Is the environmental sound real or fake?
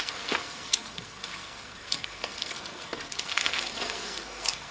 fake